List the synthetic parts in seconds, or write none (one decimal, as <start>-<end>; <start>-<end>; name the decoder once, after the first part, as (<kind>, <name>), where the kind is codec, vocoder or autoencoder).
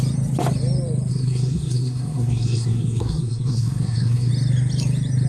1.1-4.3 (codec, SNAC)